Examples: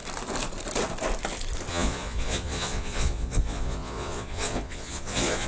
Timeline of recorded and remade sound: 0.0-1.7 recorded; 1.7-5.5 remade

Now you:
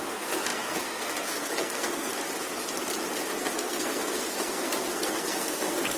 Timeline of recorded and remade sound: 0.0-2.1 remade; 2.1-3.4 recorded; 3.4-6.0 remade

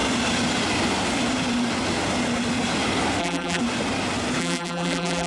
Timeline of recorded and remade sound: 0.0-3.2 recorded; 3.2-3.6 remade; 3.6-4.4 recorded; 4.4-5.3 remade